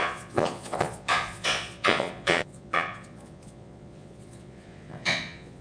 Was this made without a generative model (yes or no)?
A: no